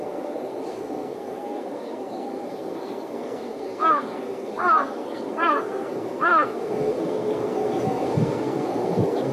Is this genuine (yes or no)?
no